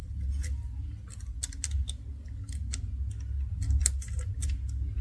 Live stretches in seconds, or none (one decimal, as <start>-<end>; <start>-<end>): 0.0-5.0